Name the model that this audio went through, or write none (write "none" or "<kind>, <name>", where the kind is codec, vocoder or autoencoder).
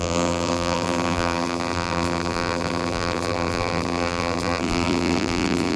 vocoder, BigVGAN v2